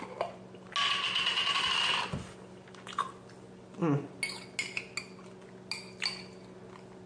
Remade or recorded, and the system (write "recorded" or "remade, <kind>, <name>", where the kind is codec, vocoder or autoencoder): recorded